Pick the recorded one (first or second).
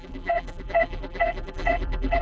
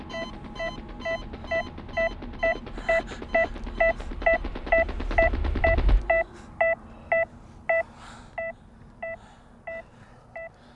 second